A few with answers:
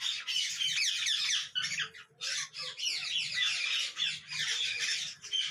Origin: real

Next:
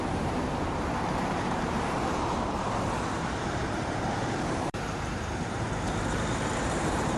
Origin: fake